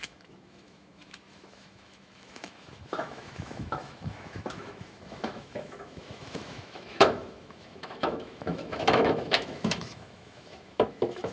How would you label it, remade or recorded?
remade